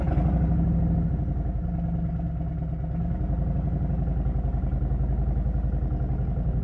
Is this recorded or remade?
recorded